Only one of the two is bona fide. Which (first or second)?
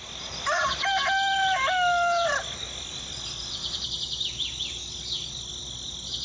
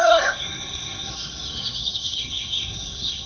first